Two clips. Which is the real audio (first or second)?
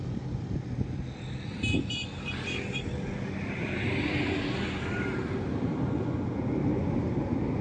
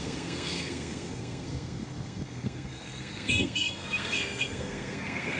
first